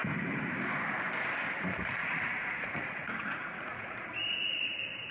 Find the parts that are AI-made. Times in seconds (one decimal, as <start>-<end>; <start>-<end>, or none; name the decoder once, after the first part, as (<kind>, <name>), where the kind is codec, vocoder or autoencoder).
2.0-4.1 (vocoder, Vocos)